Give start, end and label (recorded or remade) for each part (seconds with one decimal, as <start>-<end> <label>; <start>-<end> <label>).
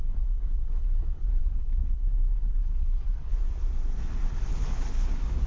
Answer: 0.0-3.3 remade; 3.3-4.3 recorded; 4.3-5.5 remade